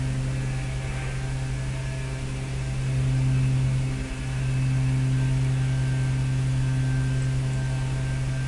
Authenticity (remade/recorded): recorded